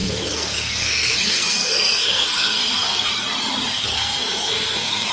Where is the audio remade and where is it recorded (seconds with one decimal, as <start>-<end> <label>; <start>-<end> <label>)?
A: 0.0-3.1 remade; 3.1-3.7 recorded; 3.7-5.1 remade